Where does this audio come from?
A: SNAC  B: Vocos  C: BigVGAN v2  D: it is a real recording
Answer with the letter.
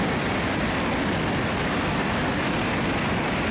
D